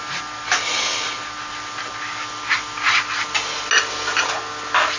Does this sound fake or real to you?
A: real